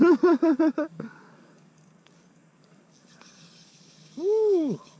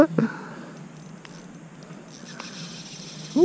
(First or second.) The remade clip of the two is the first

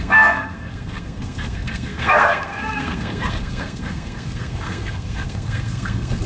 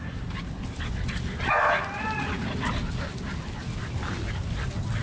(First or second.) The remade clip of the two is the first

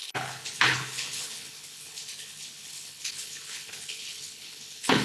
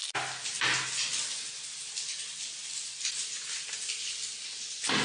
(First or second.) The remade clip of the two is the first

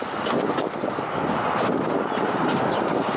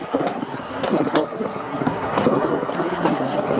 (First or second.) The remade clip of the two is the second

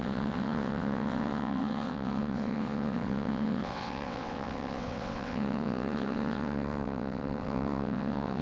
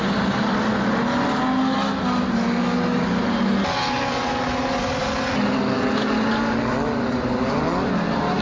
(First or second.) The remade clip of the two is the first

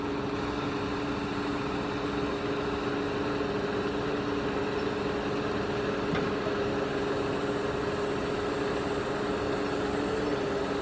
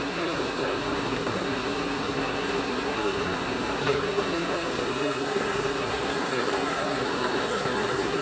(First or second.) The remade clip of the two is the second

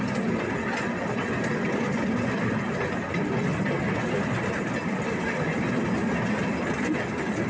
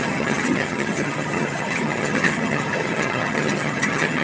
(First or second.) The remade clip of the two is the second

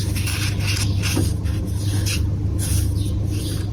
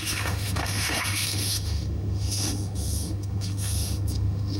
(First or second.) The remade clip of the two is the second